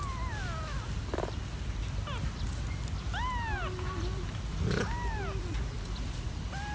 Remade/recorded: recorded